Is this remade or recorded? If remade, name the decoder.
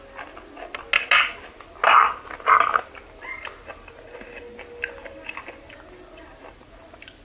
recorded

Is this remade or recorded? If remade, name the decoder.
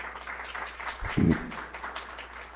recorded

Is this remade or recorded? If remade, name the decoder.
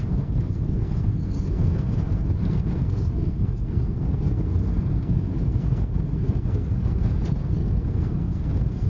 remade, codec, SNAC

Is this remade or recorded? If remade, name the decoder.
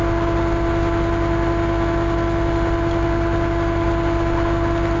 recorded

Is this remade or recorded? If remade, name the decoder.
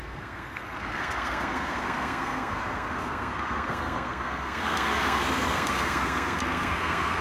remade, codec, SNAC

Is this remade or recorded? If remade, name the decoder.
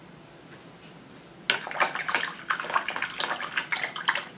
recorded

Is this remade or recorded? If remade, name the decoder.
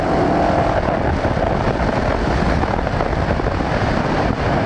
remade, vocoder, BigVGAN v2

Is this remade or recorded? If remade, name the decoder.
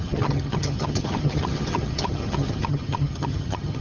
remade, vocoder, HiFi-GAN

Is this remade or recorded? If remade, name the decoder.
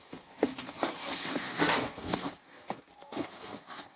remade, codec, SNAC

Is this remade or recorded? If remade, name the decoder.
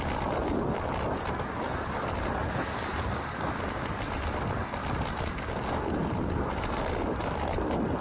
recorded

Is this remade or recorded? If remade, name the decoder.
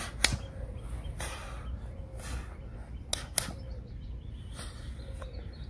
recorded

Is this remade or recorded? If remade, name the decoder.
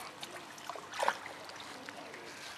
recorded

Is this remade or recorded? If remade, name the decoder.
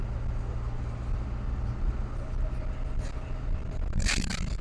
recorded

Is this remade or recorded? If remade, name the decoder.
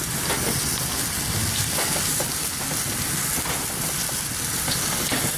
recorded